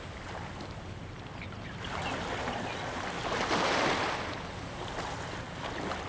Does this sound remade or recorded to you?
recorded